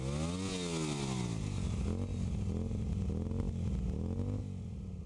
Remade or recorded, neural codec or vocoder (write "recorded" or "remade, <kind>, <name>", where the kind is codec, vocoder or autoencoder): recorded